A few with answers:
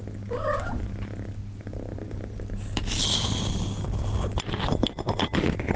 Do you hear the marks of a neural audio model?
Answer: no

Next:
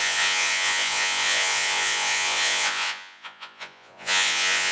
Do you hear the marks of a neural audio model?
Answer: yes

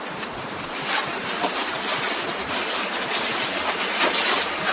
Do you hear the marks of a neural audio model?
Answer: no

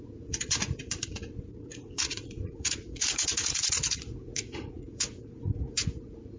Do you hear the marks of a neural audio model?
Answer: yes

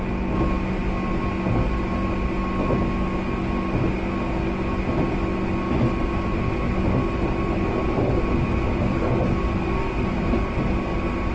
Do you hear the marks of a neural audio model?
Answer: no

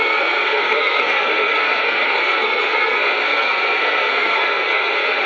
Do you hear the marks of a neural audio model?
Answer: yes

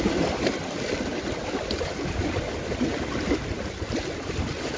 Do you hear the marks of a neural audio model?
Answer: no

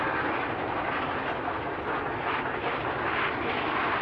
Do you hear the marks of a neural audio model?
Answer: no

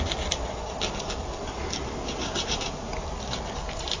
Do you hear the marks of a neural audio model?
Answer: no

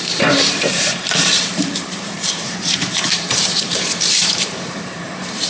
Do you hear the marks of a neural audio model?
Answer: yes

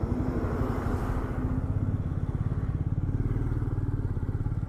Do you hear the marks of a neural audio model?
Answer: no